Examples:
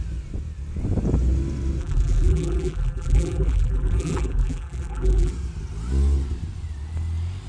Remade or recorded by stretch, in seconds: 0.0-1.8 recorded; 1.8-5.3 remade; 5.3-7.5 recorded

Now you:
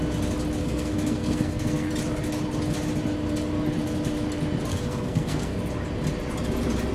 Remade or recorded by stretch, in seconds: 0.0-0.6 recorded; 0.6-1.9 remade; 1.9-4.7 recorded; 4.7-5.6 remade; 5.6-6.9 recorded

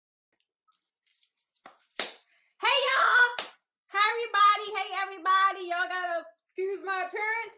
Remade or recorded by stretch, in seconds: 0.0-1.1 recorded; 1.1-4.4 remade; 4.4-7.6 recorded

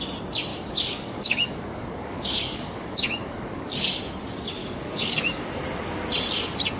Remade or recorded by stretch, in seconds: 0.0-0.5 recorded; 0.5-4.0 remade; 4.0-4.6 recorded; 4.6-5.4 remade; 5.4-6.8 recorded